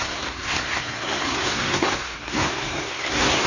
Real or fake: fake